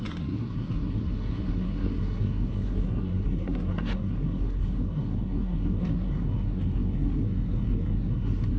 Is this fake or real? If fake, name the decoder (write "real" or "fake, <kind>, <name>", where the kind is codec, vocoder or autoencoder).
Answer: fake, codec, SNAC